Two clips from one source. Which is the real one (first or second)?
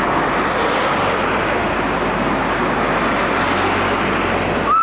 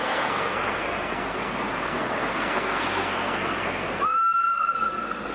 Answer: first